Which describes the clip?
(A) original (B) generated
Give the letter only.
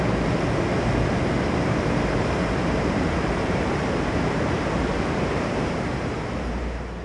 B